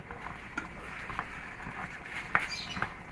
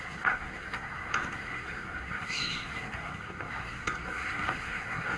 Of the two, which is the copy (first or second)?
second